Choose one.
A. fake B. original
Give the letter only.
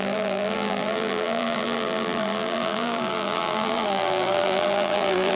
A